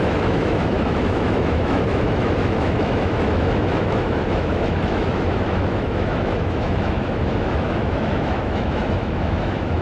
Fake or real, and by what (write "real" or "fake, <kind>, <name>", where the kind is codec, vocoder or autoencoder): fake, autoencoder, DAC-VAE